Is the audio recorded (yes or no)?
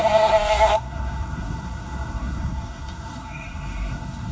no